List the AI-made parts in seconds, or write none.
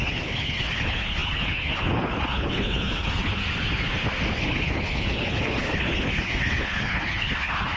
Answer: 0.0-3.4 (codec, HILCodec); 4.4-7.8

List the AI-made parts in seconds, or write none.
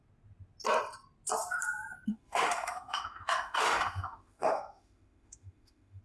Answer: 2.1-6.0 (autoencoder, DAC-VAE)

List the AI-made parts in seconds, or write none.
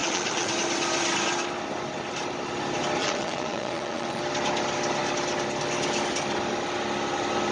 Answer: 0.0-0.5 (vocoder, Vocos); 3.0-4.2